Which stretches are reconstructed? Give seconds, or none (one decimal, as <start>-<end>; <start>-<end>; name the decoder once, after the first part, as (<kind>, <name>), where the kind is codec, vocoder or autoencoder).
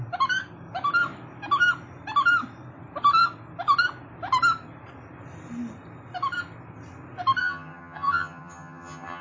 7.4-9.2 (vocoder, HiFi-GAN)